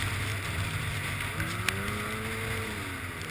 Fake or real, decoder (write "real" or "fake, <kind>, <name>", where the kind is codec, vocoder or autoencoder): real